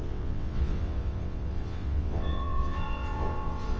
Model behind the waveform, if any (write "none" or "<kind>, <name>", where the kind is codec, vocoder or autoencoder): vocoder, WaveNeXt